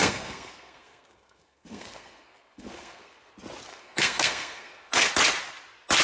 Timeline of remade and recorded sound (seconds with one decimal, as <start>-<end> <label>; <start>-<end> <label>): 0.0-3.3 remade; 3.3-3.7 recorded; 3.7-5.1 remade; 5.1-6.0 recorded